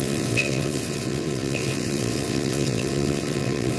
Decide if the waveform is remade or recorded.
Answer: remade